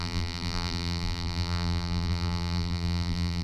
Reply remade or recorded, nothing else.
remade